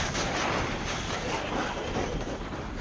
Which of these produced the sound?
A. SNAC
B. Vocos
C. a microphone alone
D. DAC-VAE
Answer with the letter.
C